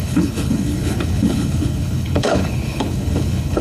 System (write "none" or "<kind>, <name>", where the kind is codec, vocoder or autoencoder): codec, HILCodec